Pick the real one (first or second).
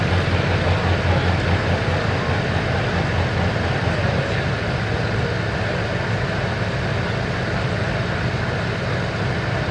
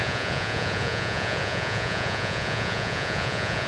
first